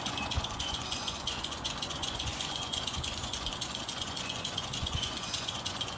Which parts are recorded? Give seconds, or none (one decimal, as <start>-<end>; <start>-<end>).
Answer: none